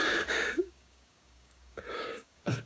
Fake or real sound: fake